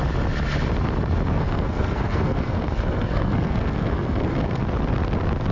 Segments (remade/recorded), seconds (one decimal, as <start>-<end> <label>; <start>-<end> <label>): 0.0-1.3 recorded; 1.3-4.6 remade; 4.6-5.5 recorded